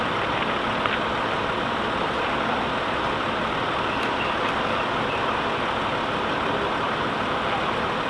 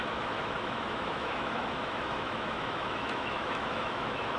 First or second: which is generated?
second